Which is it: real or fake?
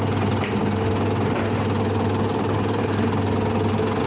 real